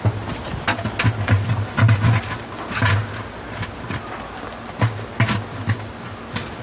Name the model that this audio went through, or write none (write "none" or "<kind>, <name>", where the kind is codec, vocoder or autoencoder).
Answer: none